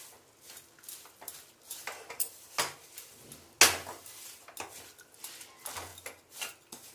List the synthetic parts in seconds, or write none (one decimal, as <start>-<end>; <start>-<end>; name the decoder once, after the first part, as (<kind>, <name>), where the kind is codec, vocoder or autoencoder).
none